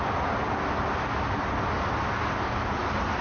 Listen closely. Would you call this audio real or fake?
real